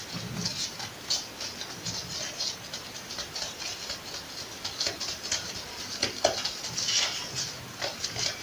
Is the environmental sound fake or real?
real